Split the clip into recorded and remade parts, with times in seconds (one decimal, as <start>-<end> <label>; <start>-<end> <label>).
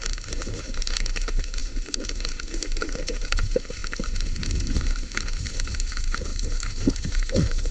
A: 0.0-7.7 remade